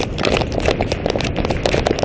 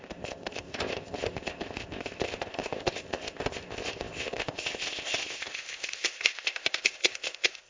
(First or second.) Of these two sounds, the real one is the first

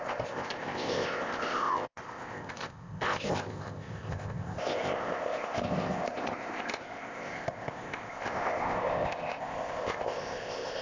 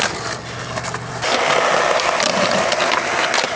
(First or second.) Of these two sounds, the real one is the second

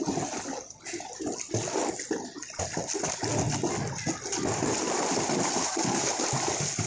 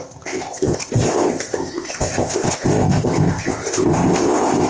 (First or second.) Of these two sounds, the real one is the first